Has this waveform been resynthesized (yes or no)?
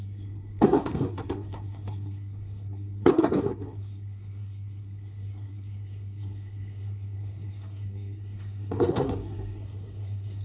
yes